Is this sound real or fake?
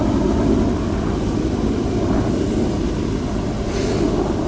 real